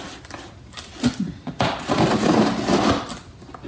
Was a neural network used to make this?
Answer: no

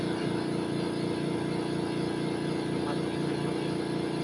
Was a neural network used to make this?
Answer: no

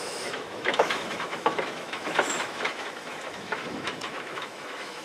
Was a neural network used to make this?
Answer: yes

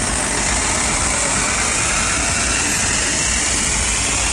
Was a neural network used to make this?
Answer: no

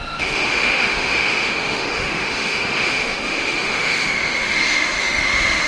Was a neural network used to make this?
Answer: yes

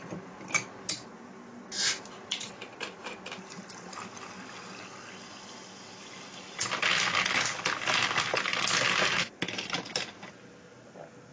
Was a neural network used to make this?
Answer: no